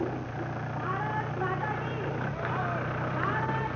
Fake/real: real